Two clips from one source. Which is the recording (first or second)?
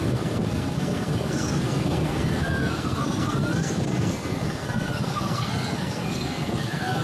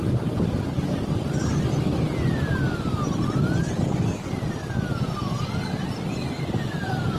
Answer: second